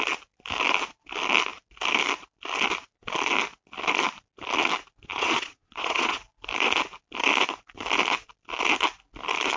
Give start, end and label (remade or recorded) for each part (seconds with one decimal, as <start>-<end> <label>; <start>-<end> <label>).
0.0-5.1 recorded; 5.1-6.2 remade; 6.2-9.6 recorded